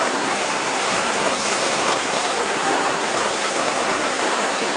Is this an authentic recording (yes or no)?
no